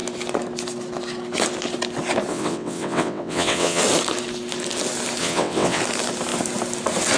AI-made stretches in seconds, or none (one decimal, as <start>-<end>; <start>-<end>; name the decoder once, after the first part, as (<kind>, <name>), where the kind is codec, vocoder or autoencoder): 2.3-3.8 (vocoder, WaveNeXt); 5.2-5.8